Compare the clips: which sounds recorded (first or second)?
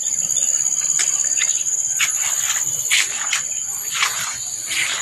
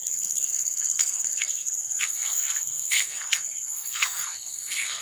first